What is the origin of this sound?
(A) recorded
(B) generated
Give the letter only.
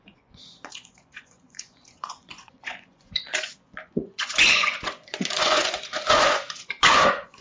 B